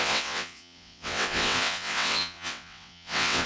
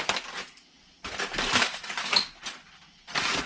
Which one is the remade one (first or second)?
first